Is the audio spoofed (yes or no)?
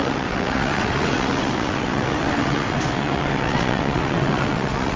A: yes